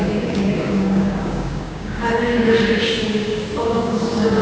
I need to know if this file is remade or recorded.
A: remade